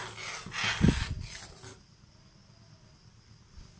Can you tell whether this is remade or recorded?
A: recorded